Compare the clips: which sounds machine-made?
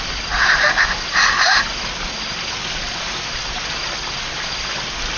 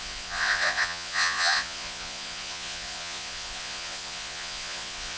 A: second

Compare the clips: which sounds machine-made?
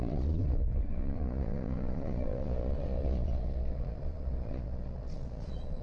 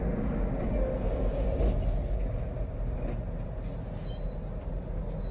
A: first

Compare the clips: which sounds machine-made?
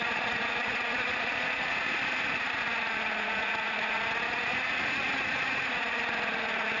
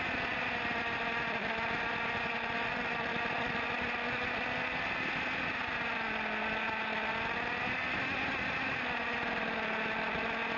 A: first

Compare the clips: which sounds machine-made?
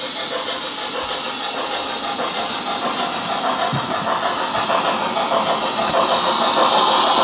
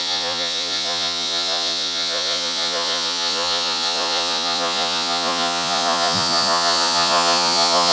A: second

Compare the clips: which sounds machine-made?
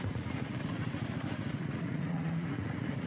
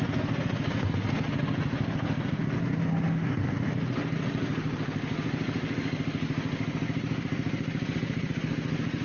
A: first